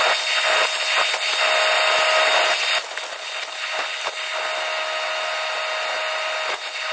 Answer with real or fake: real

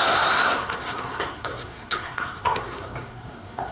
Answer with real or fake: fake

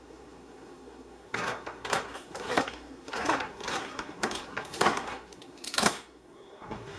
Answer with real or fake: fake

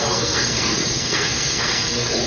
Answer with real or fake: fake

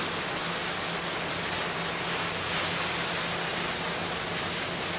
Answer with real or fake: real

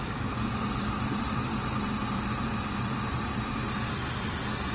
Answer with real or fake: real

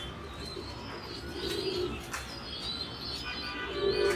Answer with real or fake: real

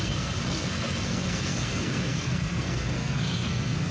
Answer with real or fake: fake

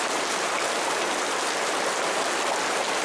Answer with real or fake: real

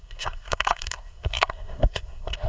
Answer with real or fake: fake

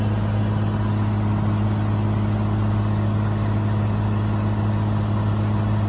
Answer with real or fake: real